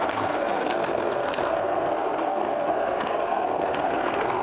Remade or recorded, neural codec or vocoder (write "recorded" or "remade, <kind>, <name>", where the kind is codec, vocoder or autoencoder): remade, codec, SNAC